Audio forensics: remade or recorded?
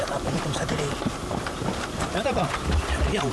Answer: remade